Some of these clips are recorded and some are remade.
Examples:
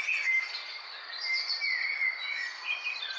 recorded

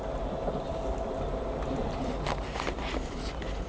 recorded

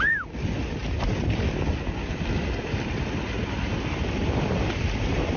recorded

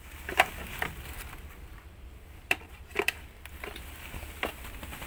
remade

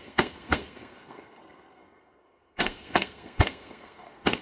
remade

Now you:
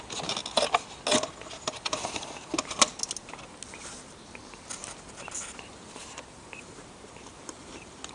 recorded